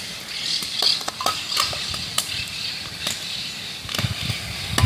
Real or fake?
real